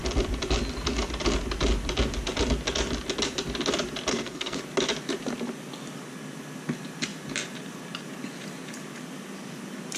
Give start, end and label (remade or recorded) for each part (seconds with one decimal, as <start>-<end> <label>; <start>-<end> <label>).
0.0-4.1 recorded; 4.1-4.6 remade; 4.6-10.0 recorded

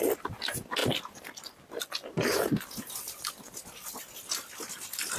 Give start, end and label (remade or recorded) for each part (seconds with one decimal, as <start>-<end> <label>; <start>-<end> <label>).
0.0-0.8 recorded; 0.8-3.9 remade; 3.9-5.2 recorded